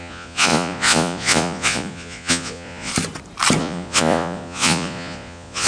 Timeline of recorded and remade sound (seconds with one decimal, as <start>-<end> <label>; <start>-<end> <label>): 0.0-2.9 remade; 2.9-3.6 recorded; 3.6-5.7 remade